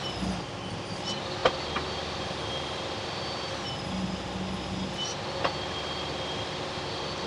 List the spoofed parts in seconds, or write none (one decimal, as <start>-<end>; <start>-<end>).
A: none